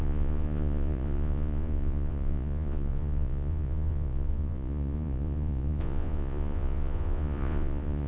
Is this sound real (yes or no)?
no